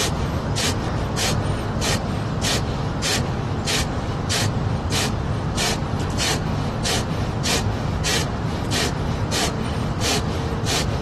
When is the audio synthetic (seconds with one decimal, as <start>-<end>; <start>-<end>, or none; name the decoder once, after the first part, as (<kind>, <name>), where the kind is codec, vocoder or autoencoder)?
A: 9.8-11.0 (vocoder, BigVGAN v2)

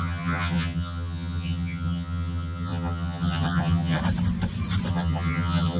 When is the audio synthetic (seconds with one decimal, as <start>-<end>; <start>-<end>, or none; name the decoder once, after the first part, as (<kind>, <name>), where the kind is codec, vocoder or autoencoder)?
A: 0.0-4.0 (vocoder, HiFi-GAN); 4.9-5.8

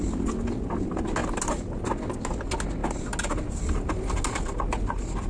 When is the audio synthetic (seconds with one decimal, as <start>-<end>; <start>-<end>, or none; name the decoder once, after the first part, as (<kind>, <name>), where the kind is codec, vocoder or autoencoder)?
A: none

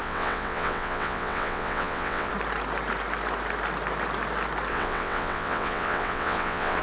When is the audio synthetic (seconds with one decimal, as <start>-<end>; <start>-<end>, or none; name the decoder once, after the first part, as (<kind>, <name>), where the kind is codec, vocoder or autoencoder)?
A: 0.0-2.3 (vocoder, WaveNeXt); 4.7-6.8

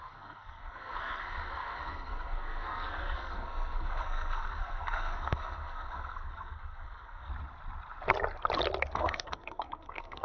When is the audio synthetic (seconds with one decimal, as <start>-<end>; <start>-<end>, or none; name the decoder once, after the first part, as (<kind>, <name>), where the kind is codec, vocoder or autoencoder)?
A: 0.0-7.3 (codec, SNAC); 8.9-10.2

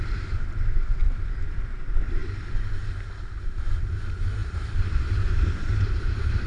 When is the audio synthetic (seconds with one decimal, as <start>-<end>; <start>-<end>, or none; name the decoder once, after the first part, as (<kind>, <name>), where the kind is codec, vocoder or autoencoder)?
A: 0.0-1.0 (vocoder, BigVGAN v2); 1.6-2.2; 3.4-6.5

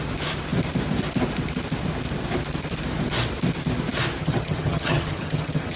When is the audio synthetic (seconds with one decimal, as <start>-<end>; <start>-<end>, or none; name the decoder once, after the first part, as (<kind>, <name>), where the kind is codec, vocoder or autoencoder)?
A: 4.2-5.8 (vocoder, HiFi-GAN)